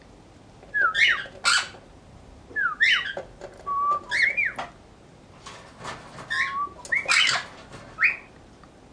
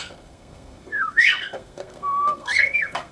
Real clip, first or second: first